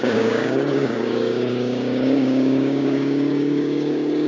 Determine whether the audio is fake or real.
fake